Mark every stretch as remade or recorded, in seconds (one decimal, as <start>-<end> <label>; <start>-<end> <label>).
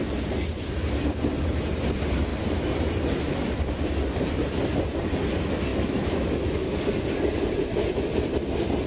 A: 0.0-5.7 recorded; 5.7-6.8 remade; 6.8-8.9 recorded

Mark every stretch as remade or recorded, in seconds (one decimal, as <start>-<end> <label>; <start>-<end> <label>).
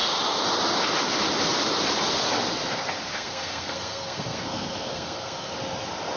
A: 0.0-3.1 recorded; 3.1-5.5 remade; 5.5-6.2 recorded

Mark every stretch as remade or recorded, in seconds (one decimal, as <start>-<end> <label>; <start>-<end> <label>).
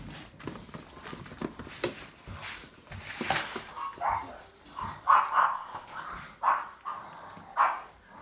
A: 0.0-5.4 recorded; 5.4-6.0 remade; 6.0-8.2 recorded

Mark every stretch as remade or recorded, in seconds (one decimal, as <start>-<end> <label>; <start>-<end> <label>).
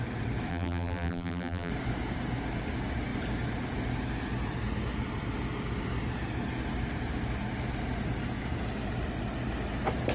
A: 0.0-0.5 recorded; 0.5-1.7 remade; 1.7-10.1 recorded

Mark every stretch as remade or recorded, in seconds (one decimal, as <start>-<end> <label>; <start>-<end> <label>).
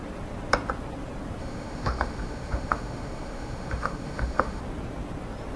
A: 0.0-1.4 recorded; 1.4-4.6 remade; 4.6-5.6 recorded